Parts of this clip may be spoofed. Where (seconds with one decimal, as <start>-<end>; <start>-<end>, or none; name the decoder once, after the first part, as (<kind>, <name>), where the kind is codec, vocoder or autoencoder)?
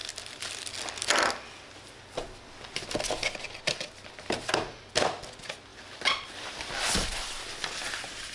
none